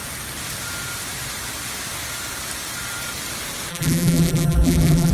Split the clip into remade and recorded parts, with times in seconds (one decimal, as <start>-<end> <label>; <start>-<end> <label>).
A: 0.0-3.7 recorded; 3.7-5.1 remade